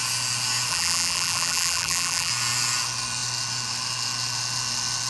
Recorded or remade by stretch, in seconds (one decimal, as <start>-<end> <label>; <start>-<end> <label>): 0.0-0.7 recorded; 0.7-2.3 remade; 2.3-5.1 recorded

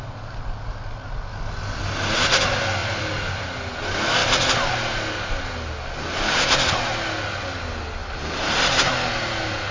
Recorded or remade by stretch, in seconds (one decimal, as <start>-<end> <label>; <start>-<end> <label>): 0.0-2.8 recorded; 2.8-3.4 remade; 3.4-4.2 recorded; 4.2-4.7 remade; 4.7-8.0 recorded; 8.0-8.9 remade; 8.9-9.7 recorded

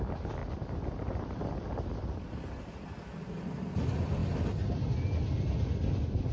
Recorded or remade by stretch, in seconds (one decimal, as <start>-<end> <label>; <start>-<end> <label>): 0.0-6.3 recorded